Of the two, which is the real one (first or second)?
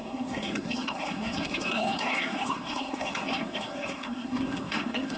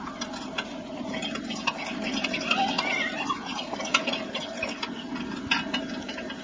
second